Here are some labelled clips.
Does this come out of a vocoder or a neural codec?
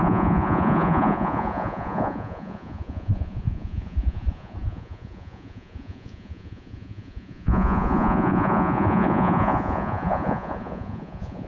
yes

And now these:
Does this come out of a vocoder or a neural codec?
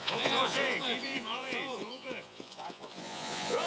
yes